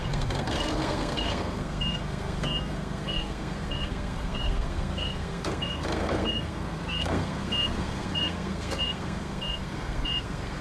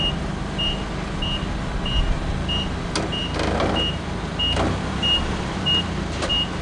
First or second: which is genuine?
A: second